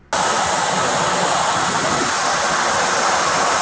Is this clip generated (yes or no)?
no